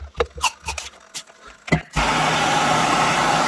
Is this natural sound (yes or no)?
yes